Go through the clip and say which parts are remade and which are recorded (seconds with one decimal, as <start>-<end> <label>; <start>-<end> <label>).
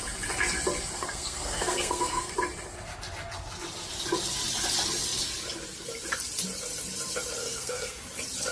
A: 0.0-1.0 recorded; 1.0-2.3 remade; 2.3-7.4 recorded; 7.4-8.0 remade; 8.0-8.5 recorded